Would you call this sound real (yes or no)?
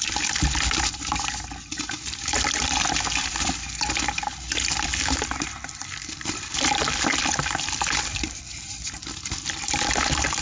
yes